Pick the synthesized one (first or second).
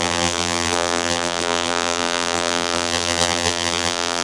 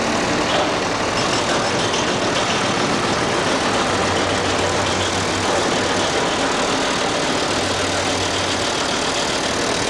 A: first